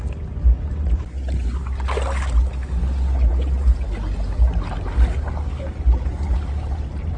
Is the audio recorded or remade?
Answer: recorded